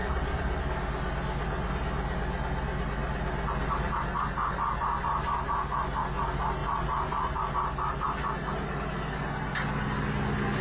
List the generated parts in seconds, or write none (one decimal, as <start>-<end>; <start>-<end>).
0.0-0.6; 6.6-7.4